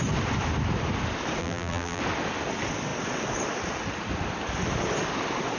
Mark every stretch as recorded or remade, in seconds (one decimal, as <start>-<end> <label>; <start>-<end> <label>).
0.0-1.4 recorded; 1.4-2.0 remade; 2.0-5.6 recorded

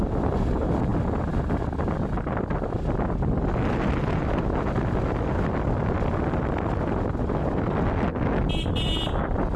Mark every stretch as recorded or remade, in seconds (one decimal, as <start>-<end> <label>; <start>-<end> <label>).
0.0-9.6 recorded

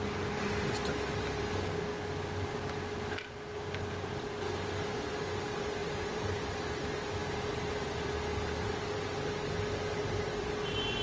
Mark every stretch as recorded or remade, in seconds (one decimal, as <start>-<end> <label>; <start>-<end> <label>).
0.0-5.8 recorded; 5.8-6.5 remade; 6.5-10.0 recorded; 10.0-10.5 remade; 10.5-11.0 recorded

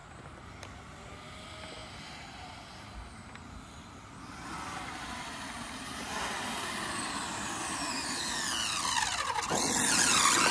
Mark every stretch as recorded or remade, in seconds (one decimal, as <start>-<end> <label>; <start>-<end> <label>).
0.0-10.5 recorded

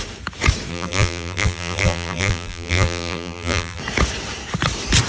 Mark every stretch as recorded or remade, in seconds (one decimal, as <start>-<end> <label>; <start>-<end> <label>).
0.0-0.7 recorded; 0.7-3.8 remade; 3.8-5.1 recorded

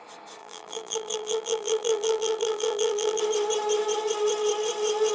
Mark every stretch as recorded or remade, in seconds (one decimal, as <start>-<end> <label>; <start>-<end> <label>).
0.0-0.4 recorded; 0.4-3.2 remade; 3.2-5.1 recorded

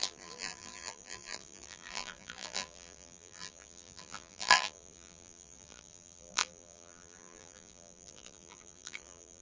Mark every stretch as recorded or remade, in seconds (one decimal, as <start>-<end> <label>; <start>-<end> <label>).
0.0-9.4 remade